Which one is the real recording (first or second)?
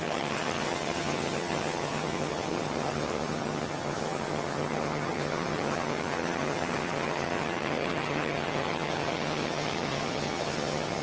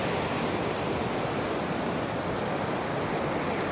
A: second